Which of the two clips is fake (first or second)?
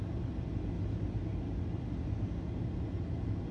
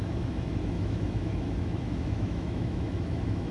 second